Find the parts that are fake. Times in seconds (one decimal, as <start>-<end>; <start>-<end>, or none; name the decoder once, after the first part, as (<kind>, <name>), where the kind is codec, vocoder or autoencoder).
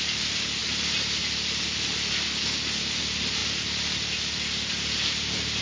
0.0-0.6 (vocoder, BigVGAN v2); 3.0-3.4